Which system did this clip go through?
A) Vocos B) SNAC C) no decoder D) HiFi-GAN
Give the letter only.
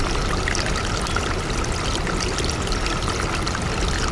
C